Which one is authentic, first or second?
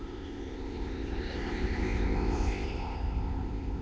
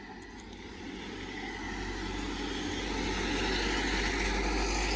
second